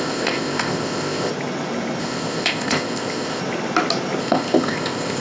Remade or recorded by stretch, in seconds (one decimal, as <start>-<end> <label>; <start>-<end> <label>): 0.0-1.3 remade; 1.3-2.0 recorded; 2.0-3.4 remade; 3.4-4.2 recorded; 4.2-5.2 remade